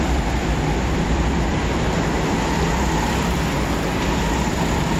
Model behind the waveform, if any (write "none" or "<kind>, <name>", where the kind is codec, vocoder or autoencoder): none